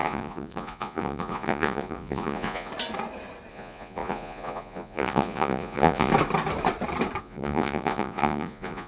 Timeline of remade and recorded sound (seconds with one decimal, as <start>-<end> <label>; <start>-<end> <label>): 0.0-2.7 remade; 2.7-3.5 recorded; 3.5-6.1 remade; 6.1-7.2 recorded; 7.2-8.9 remade